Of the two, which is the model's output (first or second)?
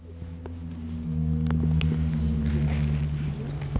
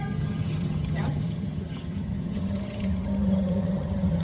second